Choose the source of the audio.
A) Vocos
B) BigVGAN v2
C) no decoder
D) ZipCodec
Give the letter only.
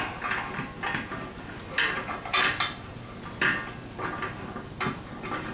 C